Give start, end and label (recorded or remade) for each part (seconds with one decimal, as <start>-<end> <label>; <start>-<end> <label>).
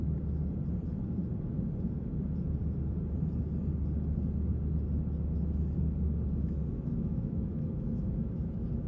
0.0-6.7 recorded; 6.7-8.5 remade; 8.5-8.9 recorded